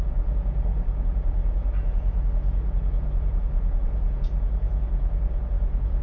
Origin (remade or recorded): remade